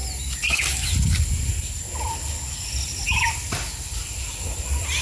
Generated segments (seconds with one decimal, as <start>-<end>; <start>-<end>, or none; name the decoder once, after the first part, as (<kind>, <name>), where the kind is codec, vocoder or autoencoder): 4.0-5.0 (vocoder, BigVGAN v2)